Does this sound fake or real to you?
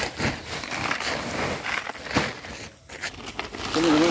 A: real